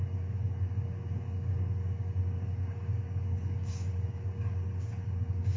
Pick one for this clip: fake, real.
fake